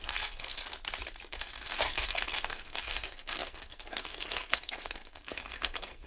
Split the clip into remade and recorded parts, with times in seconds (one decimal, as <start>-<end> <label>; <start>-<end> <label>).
0.0-0.6 remade; 0.6-1.3 recorded; 1.3-6.1 remade